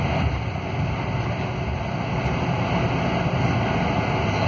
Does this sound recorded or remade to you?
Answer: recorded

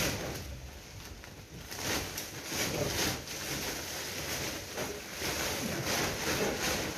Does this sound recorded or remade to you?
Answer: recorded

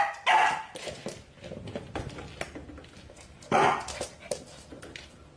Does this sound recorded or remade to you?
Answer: recorded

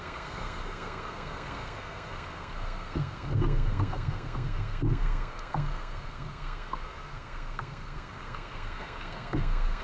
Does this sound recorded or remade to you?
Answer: remade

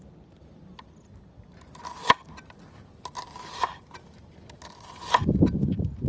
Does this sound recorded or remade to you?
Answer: recorded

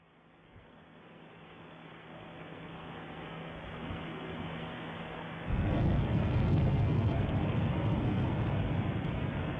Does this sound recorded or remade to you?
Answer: remade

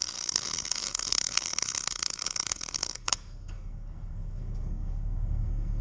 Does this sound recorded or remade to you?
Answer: remade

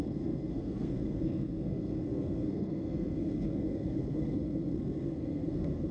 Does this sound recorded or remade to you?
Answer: remade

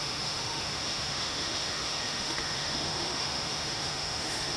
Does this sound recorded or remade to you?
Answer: remade